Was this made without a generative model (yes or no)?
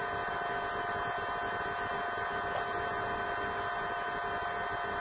yes